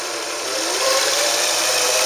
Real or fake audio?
fake